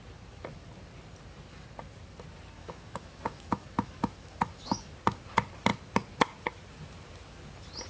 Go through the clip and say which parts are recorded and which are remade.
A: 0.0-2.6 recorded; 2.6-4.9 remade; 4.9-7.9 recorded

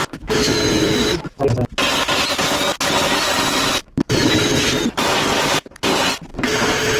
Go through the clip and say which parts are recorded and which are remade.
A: 0.0-1.4 remade; 1.4-3.8 recorded; 3.8-4.3 remade; 4.3-6.3 recorded; 6.3-7.0 remade

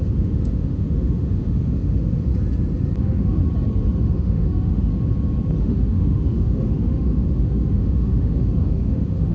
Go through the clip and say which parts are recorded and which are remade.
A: 0.0-2.3 remade; 2.3-3.0 recorded; 3.0-3.4 remade; 3.4-4.0 recorded; 4.0-4.9 remade; 4.9-5.6 recorded; 5.6-9.3 remade